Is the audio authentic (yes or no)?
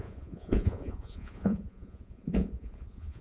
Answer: no